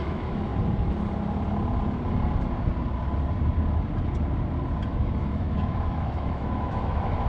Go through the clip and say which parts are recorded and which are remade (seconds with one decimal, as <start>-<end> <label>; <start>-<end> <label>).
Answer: 0.0-0.5 remade; 0.5-4.9 recorded; 4.9-7.3 remade